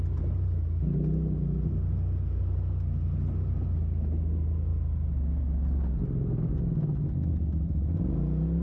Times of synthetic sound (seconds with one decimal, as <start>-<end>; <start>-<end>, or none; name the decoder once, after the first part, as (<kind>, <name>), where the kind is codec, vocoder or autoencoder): none